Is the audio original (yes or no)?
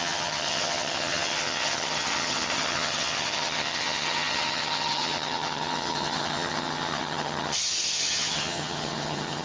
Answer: no